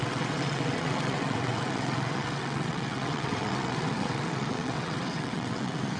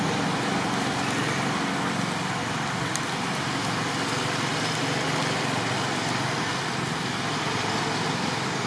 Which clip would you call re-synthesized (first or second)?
first